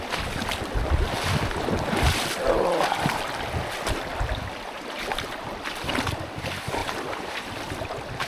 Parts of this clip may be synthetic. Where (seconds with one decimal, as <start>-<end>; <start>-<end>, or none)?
none